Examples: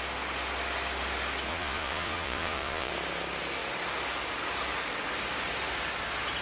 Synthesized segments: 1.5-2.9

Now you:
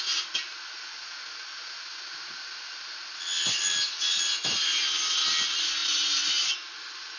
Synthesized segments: none